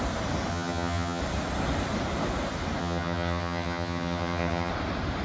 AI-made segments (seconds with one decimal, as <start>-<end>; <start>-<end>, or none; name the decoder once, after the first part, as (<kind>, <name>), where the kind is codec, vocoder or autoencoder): 0.5-1.2 (vocoder, HiFi-GAN); 2.8-4.7